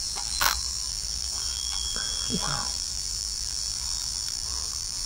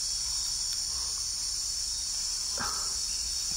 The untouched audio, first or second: second